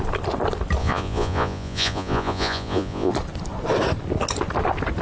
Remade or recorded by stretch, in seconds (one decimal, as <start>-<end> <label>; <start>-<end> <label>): 0.0-0.8 recorded; 0.8-3.1 remade; 3.1-5.0 recorded